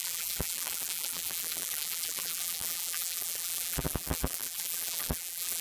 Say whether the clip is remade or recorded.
remade